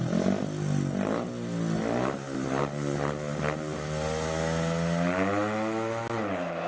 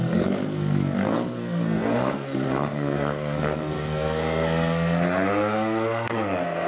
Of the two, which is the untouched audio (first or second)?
first